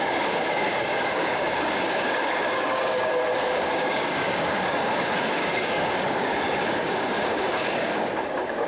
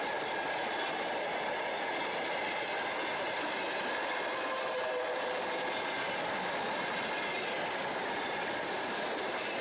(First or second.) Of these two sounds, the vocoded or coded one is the first